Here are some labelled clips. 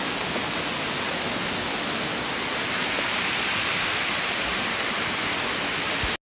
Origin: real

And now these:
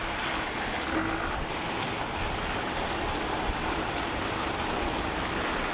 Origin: real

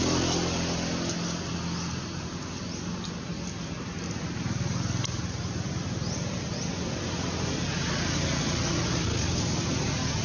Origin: real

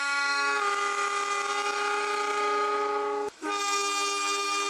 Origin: fake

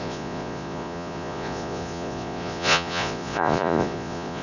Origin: fake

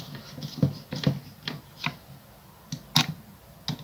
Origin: real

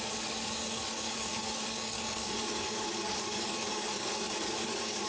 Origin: fake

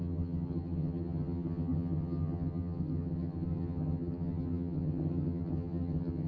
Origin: fake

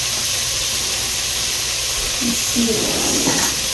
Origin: real